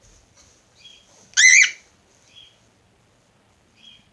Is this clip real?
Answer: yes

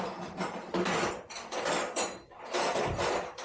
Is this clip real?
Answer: no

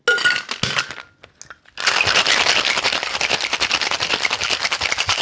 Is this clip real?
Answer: yes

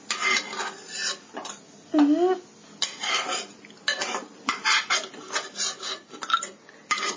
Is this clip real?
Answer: yes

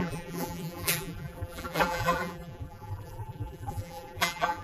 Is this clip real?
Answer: no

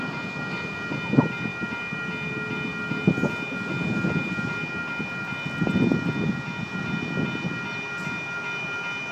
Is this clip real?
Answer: yes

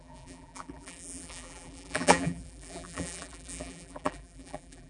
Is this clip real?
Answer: no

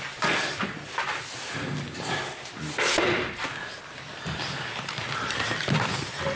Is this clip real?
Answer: no